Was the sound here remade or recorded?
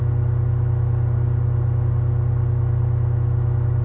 recorded